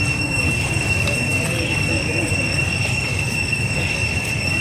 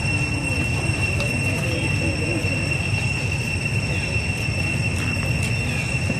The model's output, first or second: first